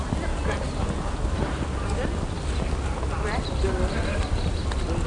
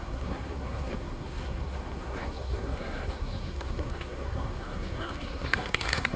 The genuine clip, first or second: first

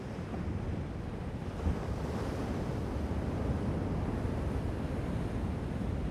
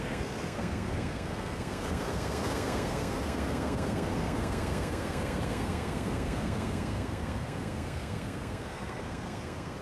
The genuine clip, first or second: first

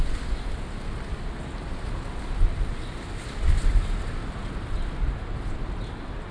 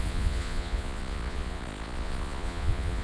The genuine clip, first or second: first